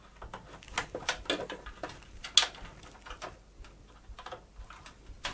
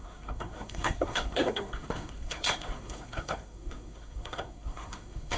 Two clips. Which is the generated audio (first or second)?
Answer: second